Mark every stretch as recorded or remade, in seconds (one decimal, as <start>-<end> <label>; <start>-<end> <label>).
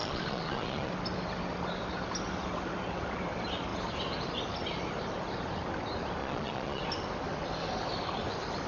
0.0-0.9 remade; 0.9-6.2 recorded; 6.2-6.8 remade; 6.8-8.7 recorded